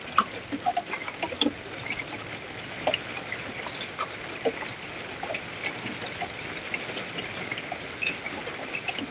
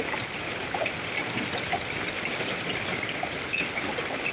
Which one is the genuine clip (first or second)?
first